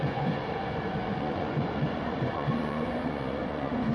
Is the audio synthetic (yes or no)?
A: yes